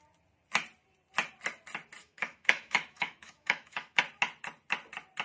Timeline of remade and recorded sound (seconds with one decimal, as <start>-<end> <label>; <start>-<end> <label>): 0.0-2.0 recorded; 2.0-4.0 remade; 4.0-5.2 recorded